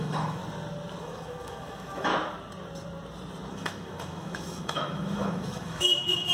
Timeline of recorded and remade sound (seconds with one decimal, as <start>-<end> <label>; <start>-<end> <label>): 0.0-0.4 remade; 0.4-1.0 recorded; 1.0-2.1 remade; 2.1-3.5 recorded; 3.5-6.3 remade